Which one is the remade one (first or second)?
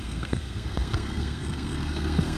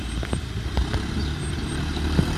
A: first